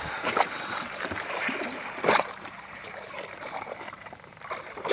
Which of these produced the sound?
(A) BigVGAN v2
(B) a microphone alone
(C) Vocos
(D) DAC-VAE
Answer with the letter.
A